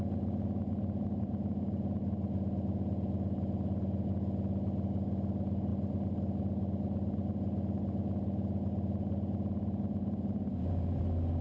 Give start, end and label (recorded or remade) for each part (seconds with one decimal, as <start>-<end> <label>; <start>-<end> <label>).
0.0-11.4 recorded